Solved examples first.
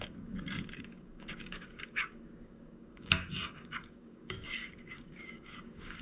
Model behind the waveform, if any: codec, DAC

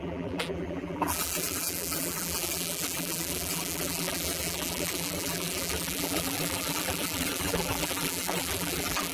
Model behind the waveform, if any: vocoder, BigVGAN v2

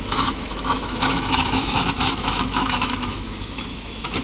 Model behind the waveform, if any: autoencoder, DAC-VAE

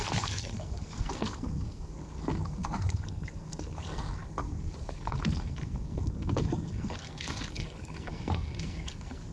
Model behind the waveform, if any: codec, SNAC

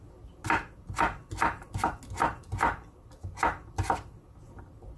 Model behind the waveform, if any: none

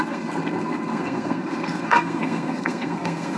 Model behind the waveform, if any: codec, SNAC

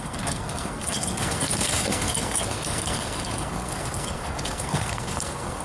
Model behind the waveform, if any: codec, SNAC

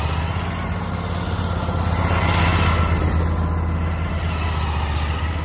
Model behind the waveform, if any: none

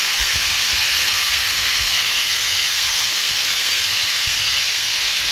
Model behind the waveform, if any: codec, SNAC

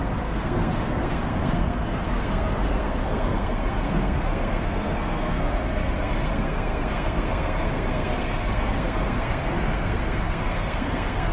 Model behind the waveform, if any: codec, SNAC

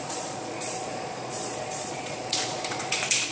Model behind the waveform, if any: vocoder, Vocos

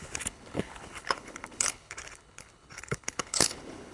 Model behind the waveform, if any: codec, HILCodec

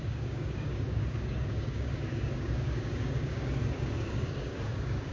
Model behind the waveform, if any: codec, DAC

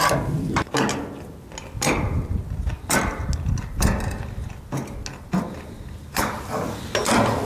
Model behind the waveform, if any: none